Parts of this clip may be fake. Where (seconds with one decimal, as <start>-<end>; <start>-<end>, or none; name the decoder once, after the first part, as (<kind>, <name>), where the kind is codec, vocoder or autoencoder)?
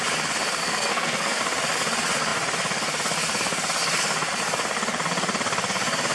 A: 0.6-1.4 (codec, SNAC)